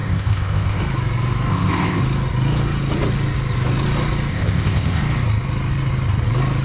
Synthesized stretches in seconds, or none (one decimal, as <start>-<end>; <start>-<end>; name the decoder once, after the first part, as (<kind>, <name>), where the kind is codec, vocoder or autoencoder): 0.0-0.8 (codec, ZipCodec); 1.5-2.0; 4.3-5.0